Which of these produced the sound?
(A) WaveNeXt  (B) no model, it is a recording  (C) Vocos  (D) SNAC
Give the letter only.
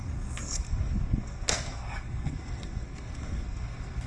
D